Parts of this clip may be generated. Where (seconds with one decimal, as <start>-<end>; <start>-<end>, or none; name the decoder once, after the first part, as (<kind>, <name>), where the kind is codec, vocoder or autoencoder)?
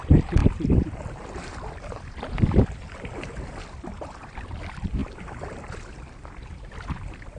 0.0-7.4 (vocoder, BigVGAN v2)